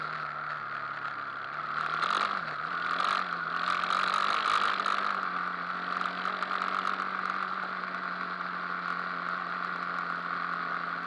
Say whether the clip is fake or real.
real